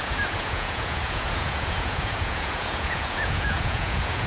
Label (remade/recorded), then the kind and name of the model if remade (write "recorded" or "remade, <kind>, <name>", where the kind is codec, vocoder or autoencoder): remade, vocoder, Vocos